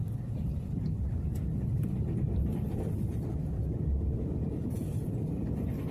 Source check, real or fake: real